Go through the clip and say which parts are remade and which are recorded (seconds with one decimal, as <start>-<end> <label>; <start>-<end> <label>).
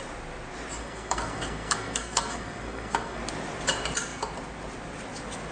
0.0-0.8 recorded; 0.8-3.2 remade; 3.2-5.5 recorded